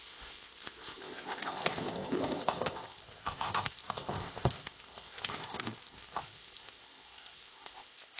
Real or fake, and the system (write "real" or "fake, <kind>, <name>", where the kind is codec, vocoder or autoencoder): fake, codec, ZipCodec